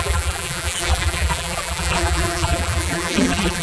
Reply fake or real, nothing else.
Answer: fake